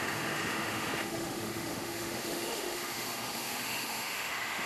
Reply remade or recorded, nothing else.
remade